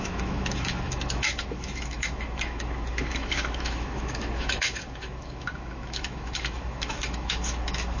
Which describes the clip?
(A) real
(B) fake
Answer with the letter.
B